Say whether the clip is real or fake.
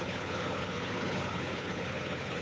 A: fake